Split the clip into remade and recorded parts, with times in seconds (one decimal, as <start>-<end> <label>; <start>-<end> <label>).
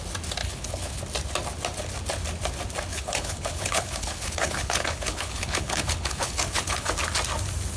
0.0-0.4 recorded; 0.4-1.0 remade; 1.0-2.9 recorded; 2.9-6.9 remade; 6.9-7.8 recorded